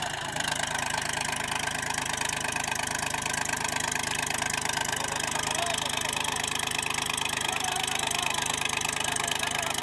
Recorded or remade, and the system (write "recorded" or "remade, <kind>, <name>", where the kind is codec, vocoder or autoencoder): recorded